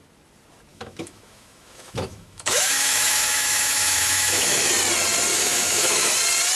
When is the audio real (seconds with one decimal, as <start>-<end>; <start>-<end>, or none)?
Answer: 0.0-0.7; 4.7-5.3; 6.1-6.6